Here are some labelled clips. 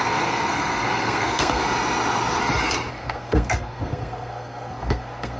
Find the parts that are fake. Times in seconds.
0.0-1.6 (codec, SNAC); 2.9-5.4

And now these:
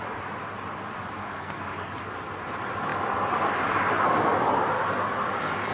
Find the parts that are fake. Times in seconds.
1.2-1.9 (codec, SNAC)